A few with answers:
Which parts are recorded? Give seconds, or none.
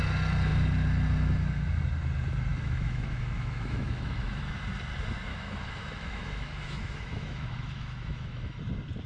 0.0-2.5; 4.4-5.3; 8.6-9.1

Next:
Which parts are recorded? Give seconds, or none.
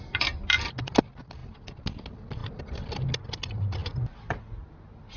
0.0-5.2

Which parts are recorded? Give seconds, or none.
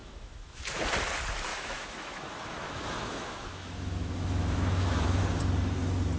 0.8-1.5; 5.2-6.2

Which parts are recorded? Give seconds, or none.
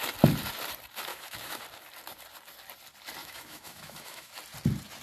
0.0-1.1; 1.6-3.2; 4.3-5.0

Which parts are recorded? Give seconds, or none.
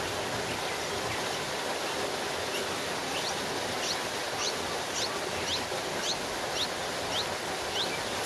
0.0-8.3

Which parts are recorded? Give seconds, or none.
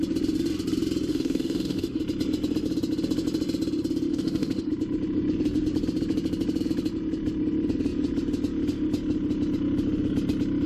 0.0-1.1; 2.0-4.1; 4.7-10.7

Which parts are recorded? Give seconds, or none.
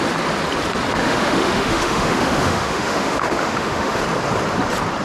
0.0-1.0; 4.0-5.0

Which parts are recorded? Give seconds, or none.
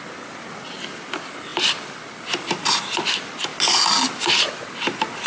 0.0-5.3